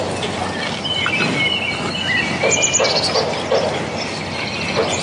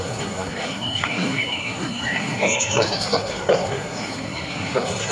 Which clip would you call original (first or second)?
first